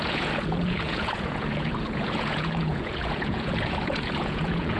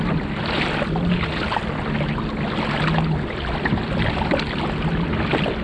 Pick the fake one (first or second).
first